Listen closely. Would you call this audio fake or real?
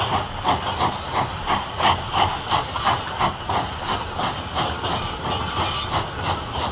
real